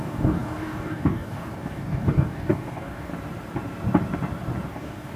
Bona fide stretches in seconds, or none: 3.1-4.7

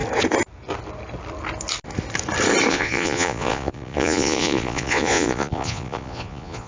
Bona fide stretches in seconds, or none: 0.0-2.7

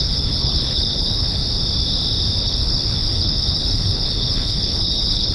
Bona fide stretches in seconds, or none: 1.4-2.4

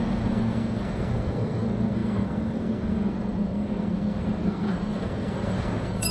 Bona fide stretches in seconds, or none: none

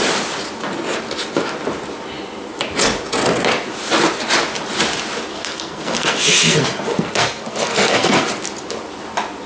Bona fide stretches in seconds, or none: 0.0-5.3; 8.3-9.5

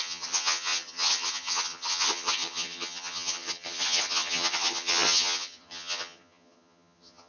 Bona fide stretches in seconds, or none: none

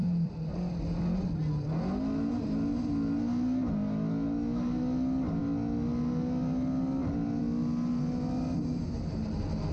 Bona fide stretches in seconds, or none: 0.0-9.7

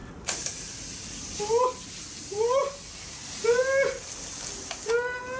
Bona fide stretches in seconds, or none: 0.0-5.4